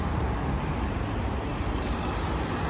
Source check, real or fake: real